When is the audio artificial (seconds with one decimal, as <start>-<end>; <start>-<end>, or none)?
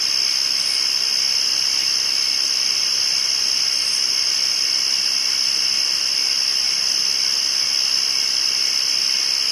none